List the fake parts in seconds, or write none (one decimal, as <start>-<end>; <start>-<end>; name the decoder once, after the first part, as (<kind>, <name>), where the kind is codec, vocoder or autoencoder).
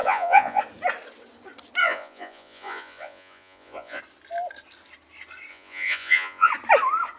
0.0-0.6 (vocoder, Vocos); 1.8-4.0; 5.5-6.5